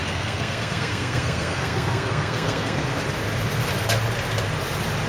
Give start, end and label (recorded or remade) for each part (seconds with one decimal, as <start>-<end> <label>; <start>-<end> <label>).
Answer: 0.0-2.9 remade; 2.9-5.1 recorded